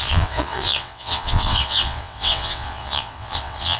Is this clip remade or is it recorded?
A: remade